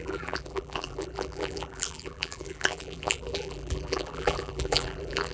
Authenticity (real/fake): fake